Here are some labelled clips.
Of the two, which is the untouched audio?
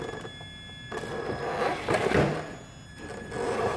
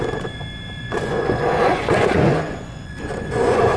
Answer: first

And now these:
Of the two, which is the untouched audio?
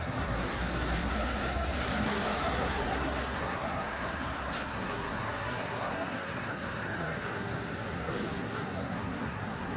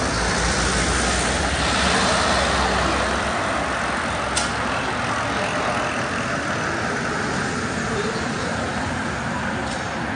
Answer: second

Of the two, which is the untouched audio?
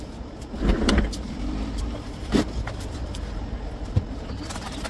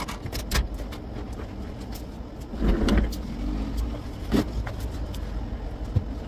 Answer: second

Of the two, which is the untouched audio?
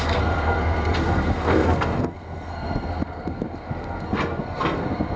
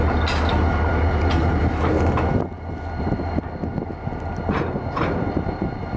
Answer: second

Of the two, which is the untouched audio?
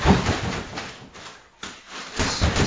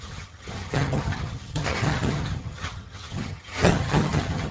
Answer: first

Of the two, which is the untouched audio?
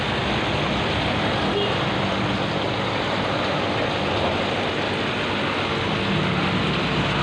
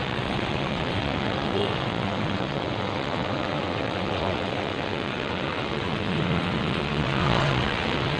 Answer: first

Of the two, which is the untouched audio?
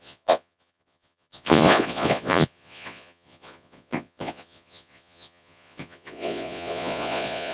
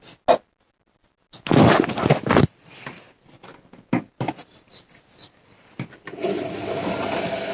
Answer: second